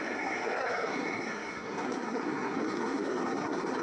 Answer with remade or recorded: remade